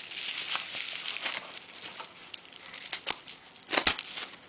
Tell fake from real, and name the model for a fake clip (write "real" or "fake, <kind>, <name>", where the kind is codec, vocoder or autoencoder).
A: real